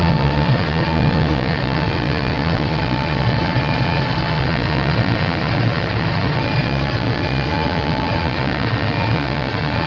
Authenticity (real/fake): fake